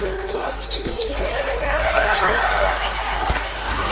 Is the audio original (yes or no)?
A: no